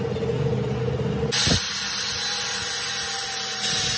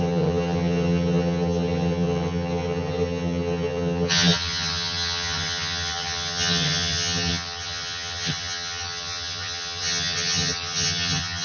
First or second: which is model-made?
second